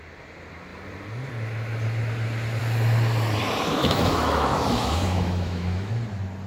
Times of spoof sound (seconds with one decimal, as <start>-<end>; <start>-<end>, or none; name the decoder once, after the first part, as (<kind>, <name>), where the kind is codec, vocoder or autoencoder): 3.8-5.9 (autoencoder, DAC-VAE)